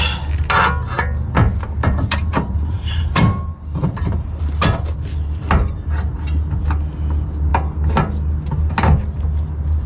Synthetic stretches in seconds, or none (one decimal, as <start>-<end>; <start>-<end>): 1.8-4.4